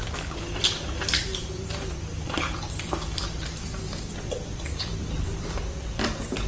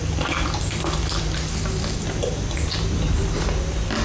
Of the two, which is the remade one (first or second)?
first